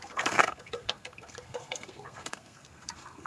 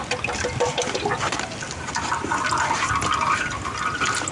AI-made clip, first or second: first